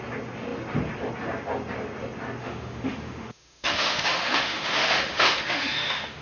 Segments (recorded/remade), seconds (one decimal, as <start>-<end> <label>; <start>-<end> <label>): 0.0-2.4 recorded; 2.4-6.2 remade